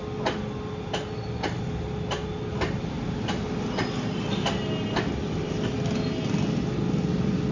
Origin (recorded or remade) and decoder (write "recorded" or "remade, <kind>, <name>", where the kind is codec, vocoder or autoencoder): recorded